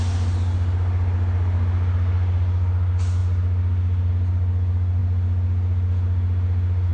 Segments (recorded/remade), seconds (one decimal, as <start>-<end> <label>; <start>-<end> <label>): 0.0-6.9 recorded